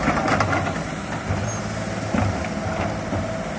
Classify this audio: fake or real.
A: real